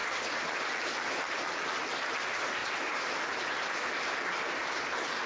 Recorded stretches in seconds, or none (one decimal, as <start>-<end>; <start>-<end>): 1.3-2.6; 3.9-5.3